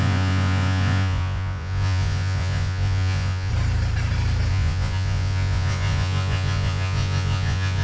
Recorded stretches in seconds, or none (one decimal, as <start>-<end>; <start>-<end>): 3.5-4.5